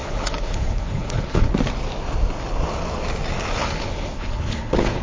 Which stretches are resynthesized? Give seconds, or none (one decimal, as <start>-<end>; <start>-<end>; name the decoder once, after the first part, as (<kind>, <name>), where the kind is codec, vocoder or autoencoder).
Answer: 0.0-1.5 (codec, HILCodec); 3.6-5.0

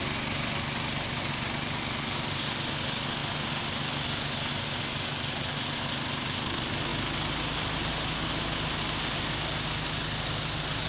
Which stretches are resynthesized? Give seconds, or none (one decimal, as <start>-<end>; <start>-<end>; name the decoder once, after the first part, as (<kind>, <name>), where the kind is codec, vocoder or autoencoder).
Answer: none

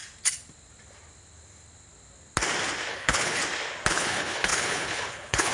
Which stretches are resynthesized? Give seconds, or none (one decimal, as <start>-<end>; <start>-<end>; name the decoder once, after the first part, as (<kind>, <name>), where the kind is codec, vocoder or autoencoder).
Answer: 2.9-3.4 (codec, HILCodec); 3.9-5.5

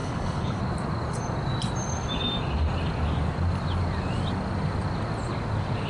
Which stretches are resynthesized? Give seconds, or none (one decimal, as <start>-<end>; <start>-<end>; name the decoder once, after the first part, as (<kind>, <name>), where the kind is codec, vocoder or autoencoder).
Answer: 0.0-0.6 (codec, HILCodec)

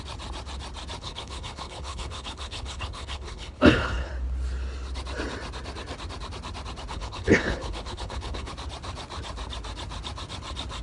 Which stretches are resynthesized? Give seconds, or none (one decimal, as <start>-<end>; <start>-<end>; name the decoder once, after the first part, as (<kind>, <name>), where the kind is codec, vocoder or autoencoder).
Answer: 1.0-4.1 (codec, HILCodec); 6.9-8.5

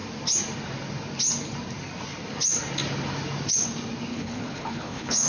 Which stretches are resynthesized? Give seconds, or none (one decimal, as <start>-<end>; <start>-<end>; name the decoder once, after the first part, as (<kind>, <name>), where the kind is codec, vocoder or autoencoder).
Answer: 4.1-5.3 (codec, HILCodec)